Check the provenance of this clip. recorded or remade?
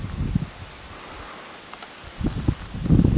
recorded